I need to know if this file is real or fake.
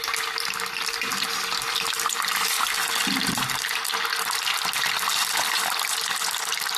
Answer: real